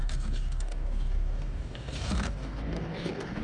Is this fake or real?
fake